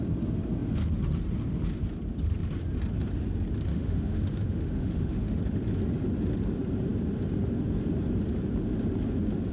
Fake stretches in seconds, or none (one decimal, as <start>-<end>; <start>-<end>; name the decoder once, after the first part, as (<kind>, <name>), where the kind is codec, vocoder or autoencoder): 3.7-5.4 (autoencoder, DAC-VAE)